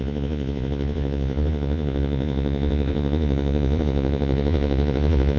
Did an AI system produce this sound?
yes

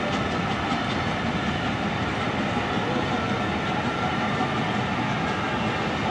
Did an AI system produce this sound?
no